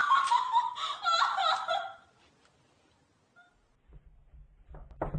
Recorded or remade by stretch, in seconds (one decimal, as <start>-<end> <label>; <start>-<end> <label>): 0.0-5.2 recorded